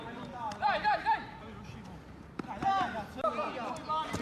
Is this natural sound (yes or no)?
no